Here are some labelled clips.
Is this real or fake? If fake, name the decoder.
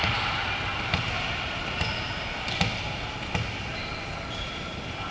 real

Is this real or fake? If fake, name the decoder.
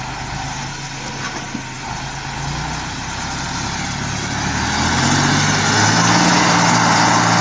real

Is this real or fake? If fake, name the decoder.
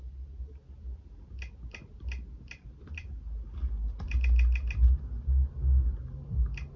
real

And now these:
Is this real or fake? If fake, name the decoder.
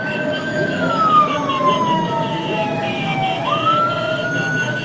fake, autoencoder, DAC-VAE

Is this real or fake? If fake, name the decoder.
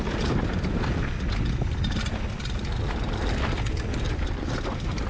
real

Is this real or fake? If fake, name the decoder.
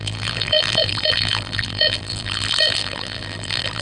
fake, vocoder, BigVGAN v2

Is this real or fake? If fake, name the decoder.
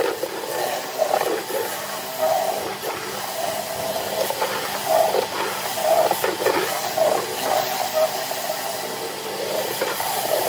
real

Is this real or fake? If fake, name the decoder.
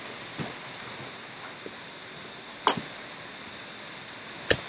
real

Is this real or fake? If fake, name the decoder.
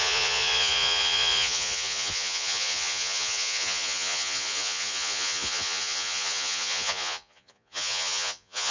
fake, vocoder, Vocos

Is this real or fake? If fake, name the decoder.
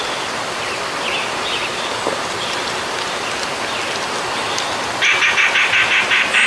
real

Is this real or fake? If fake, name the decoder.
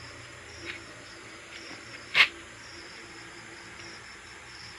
fake, vocoder, BigVGAN v2